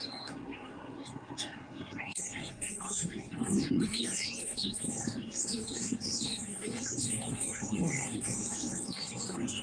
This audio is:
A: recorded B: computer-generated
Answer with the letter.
B